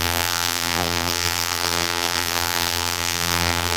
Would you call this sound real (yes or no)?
no